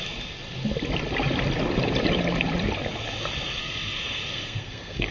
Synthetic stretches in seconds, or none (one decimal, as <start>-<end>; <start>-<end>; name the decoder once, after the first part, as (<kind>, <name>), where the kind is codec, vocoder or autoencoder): 3.6-5.1 (codec, SNAC)